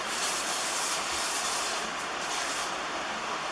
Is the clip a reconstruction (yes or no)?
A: yes